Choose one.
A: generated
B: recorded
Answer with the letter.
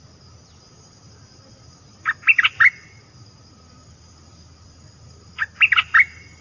B